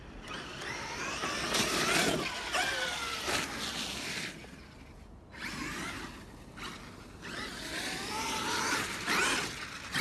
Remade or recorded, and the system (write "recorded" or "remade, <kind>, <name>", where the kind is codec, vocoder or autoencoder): recorded